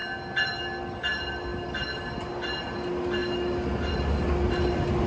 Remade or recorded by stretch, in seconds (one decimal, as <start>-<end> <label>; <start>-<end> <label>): 0.0-5.1 recorded